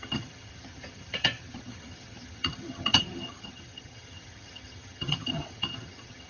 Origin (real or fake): fake